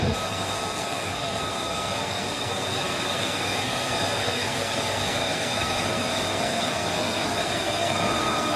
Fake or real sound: fake